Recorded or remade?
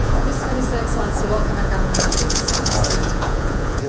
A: remade